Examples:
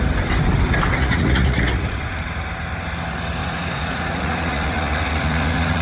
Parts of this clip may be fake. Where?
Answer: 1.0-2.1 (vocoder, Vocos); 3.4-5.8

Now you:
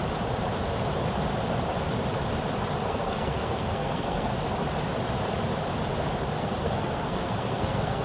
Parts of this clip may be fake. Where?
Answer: 2.8-4.3 (codec, SNAC); 6.4-8.0